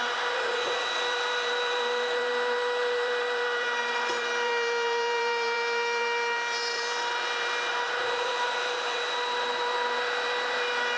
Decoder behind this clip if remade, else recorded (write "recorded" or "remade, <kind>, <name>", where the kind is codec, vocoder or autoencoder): remade, vocoder, BigVGAN v2